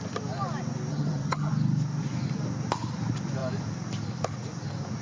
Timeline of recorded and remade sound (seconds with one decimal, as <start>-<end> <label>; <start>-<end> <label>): 0.0-0.9 recorded; 0.9-1.5 remade; 1.5-5.0 recorded